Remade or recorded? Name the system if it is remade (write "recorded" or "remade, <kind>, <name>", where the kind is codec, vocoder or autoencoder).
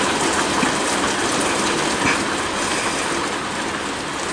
recorded